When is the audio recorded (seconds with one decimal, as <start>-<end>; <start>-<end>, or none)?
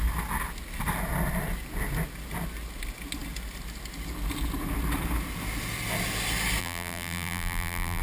0.0-6.6